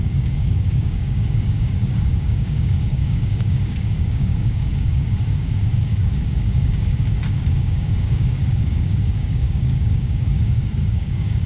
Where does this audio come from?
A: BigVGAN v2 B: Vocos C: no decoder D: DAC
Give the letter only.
D